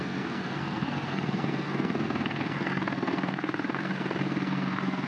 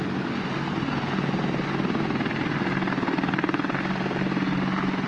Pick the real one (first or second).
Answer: second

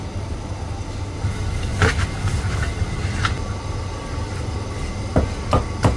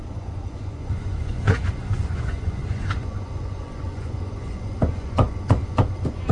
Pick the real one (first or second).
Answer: first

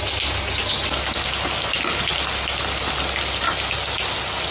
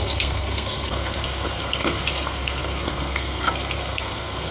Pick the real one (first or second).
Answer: first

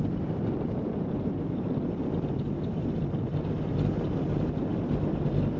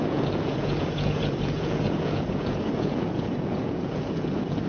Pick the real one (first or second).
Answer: first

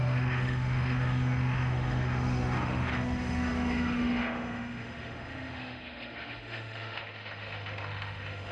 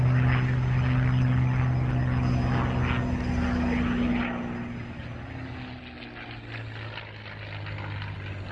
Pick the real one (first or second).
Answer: second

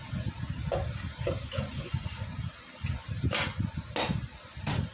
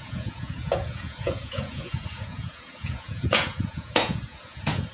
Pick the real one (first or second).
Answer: first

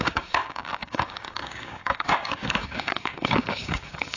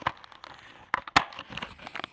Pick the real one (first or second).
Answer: second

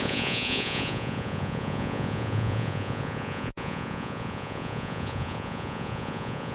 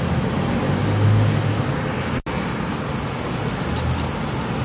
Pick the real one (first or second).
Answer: second